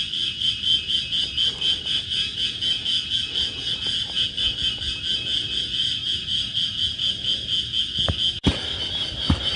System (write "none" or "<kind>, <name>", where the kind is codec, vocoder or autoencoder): none